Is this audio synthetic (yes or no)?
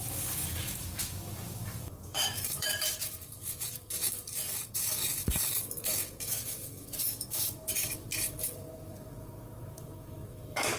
yes